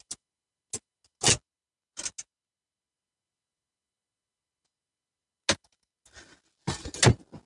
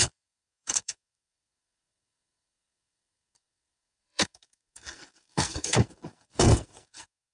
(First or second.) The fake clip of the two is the second